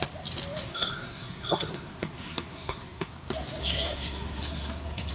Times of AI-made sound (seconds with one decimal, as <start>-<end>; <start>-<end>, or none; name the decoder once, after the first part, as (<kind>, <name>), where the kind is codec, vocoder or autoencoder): 0.6-3.1 (codec, SNAC); 3.6-5.1